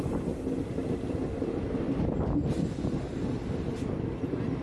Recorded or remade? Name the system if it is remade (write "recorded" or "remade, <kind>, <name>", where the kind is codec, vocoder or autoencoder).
recorded